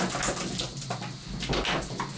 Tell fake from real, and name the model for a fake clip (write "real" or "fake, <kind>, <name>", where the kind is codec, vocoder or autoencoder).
real